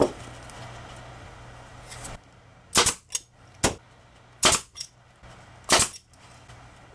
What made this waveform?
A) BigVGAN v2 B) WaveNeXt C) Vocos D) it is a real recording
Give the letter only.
D